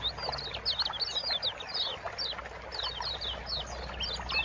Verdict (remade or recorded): recorded